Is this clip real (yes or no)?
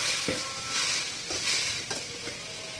yes